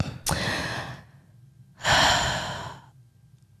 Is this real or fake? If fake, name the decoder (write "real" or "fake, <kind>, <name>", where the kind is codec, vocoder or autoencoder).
real